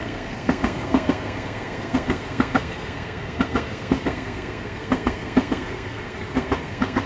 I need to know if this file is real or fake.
fake